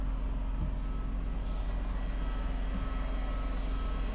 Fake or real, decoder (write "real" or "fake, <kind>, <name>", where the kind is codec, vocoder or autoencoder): real